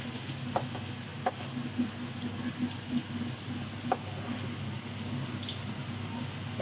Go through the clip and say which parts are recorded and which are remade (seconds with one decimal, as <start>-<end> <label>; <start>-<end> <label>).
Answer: 0.0-6.6 recorded